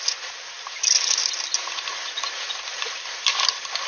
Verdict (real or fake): real